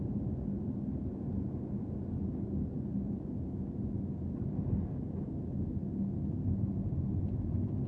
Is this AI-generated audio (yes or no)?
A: no